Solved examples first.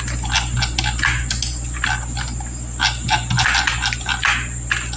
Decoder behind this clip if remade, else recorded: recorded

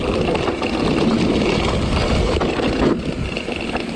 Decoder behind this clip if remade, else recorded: recorded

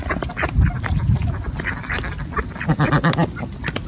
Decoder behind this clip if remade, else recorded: recorded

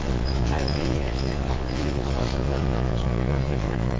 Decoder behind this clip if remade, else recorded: remade, vocoder, Vocos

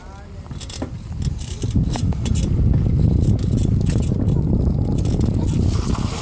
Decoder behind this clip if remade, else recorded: recorded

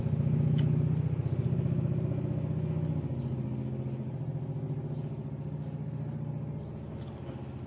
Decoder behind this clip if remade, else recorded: recorded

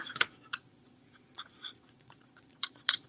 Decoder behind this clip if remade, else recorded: remade, vocoder, Vocos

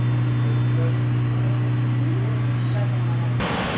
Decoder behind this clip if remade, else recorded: recorded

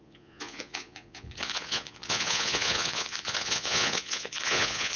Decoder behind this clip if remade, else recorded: remade, vocoder, Vocos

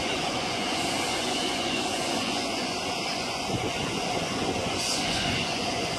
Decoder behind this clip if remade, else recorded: remade, vocoder, Vocos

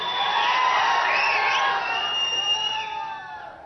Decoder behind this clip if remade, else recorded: recorded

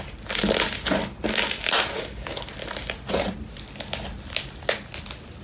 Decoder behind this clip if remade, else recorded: recorded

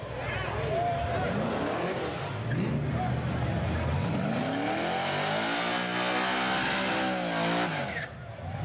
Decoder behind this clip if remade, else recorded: recorded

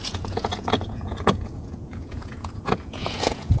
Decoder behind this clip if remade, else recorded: remade, vocoder, Vocos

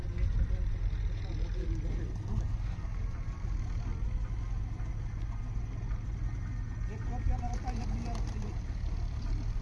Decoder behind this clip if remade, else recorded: recorded